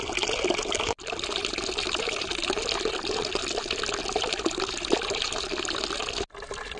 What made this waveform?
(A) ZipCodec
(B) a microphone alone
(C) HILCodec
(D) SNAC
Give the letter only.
B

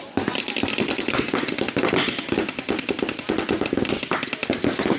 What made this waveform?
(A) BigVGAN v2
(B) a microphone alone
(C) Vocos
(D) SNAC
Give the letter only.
B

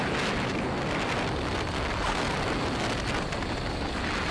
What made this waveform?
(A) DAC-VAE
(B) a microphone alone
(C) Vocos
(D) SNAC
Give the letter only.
B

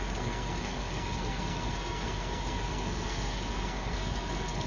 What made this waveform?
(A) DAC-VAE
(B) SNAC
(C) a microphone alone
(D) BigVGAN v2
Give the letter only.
B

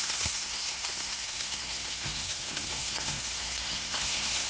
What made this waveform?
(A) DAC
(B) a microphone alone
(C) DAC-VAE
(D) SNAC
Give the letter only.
D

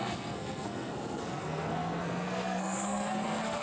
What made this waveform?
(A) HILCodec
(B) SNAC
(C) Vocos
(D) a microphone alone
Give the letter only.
B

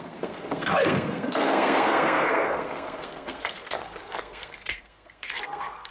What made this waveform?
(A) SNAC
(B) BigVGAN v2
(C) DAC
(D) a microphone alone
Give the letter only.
A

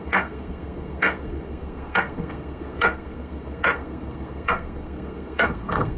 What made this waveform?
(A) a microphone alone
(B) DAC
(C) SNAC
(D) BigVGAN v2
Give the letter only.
C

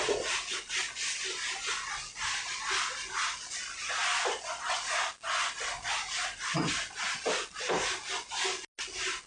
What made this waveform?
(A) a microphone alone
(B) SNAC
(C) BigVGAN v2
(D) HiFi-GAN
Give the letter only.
A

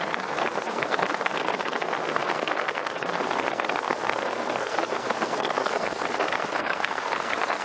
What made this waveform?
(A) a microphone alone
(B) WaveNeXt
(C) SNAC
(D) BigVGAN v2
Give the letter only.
C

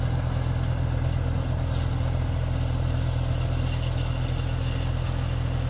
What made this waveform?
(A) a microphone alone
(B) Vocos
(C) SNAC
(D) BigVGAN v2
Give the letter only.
A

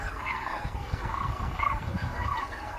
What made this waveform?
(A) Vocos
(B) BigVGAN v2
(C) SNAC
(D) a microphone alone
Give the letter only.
C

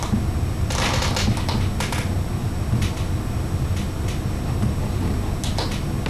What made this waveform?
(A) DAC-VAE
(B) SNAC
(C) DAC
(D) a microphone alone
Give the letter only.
D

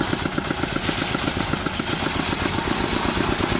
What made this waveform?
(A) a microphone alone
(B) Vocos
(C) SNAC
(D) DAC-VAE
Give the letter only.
A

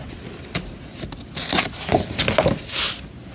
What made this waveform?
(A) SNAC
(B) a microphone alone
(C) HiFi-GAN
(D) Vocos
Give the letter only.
B